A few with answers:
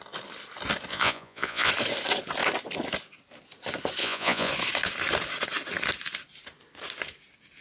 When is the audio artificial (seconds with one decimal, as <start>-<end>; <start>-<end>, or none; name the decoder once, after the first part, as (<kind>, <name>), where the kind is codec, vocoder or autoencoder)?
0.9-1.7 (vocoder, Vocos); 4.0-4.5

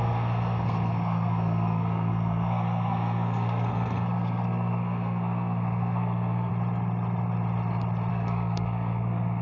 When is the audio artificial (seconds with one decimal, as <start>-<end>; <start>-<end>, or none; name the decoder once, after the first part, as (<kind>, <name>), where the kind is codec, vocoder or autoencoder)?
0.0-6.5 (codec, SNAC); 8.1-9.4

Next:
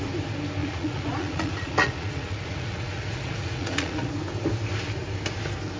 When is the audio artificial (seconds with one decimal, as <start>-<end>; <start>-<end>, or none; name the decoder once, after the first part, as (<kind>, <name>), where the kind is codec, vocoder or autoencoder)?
0.6-4.1 (vocoder, Vocos)

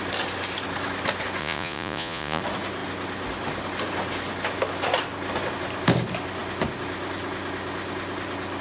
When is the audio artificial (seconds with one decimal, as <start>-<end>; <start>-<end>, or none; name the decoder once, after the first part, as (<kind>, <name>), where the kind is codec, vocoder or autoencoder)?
1.4-2.4 (vocoder, Vocos)